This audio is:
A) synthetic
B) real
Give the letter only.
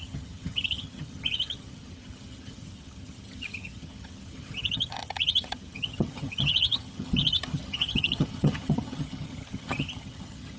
A